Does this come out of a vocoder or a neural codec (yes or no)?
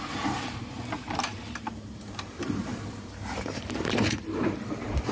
yes